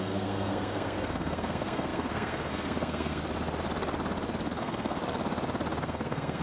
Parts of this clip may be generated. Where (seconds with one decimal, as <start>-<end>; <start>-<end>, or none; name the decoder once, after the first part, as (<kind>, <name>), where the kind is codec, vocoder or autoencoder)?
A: 0.0-3.2 (codec, SNAC); 4.6-5.0; 5.8-6.4